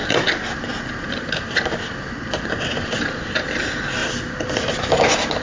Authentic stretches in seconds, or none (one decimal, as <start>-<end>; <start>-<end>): 0.0-5.4